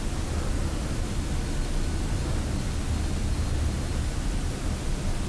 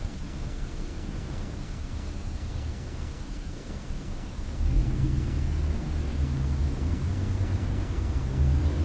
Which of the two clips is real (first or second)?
first